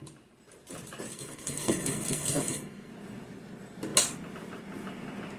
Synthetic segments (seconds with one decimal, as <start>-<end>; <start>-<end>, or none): 1.1-2.9